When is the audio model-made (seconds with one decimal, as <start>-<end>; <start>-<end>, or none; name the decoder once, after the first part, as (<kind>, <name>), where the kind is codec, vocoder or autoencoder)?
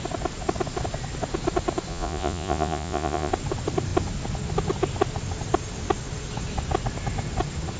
1.9-3.3 (vocoder, Vocos)